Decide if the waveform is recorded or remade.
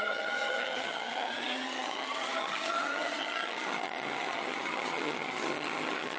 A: remade